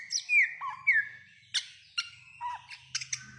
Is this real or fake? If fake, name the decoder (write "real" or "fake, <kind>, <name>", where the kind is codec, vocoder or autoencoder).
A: real